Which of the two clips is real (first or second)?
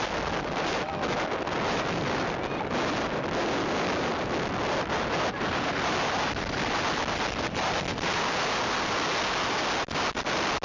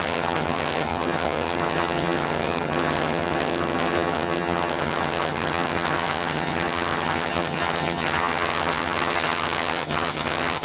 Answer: first